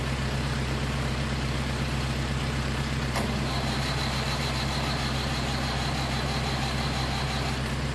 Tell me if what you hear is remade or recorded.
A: remade